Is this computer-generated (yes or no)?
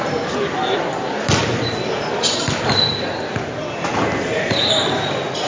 no